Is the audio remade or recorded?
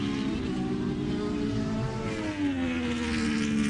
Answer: recorded